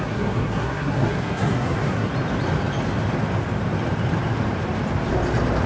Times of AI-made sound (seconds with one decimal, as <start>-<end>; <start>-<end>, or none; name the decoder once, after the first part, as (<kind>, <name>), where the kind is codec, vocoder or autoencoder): 0.0-2.1 (codec, SNAC)